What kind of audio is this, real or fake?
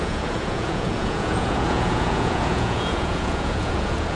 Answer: fake